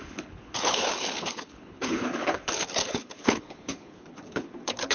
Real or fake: fake